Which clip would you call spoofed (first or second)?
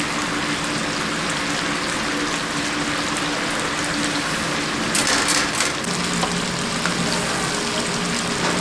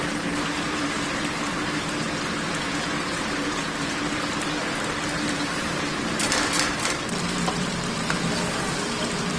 second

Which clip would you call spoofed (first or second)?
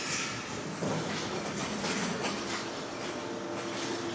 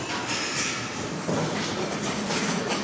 second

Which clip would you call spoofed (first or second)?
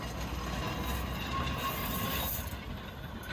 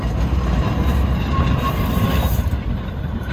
second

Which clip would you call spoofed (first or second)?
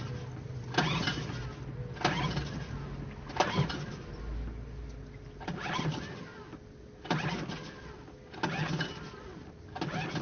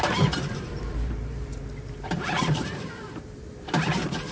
second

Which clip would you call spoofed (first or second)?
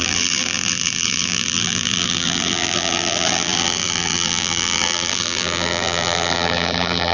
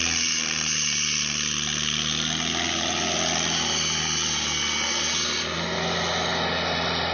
first